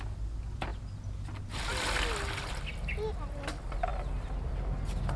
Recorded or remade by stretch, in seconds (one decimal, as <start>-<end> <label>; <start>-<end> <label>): 0.0-5.2 recorded

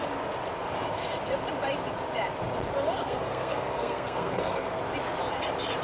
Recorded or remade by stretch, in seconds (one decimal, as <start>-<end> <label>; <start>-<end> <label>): 0.0-3.0 recorded; 3.0-4.8 remade; 4.8-5.8 recorded